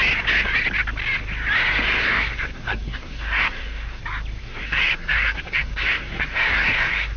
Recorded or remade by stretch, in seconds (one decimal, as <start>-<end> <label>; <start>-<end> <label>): 0.0-2.0 recorded; 2.0-4.0 remade; 4.0-4.4 recorded; 4.4-7.2 remade